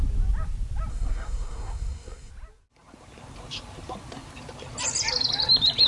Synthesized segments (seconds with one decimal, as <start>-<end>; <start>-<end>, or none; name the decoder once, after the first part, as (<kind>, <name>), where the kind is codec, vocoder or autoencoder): 0.9-2.3 (codec, SNAC)